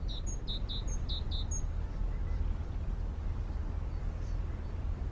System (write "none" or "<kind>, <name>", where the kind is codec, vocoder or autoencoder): none